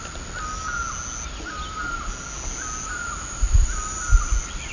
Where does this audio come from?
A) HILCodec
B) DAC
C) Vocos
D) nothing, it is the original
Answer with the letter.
D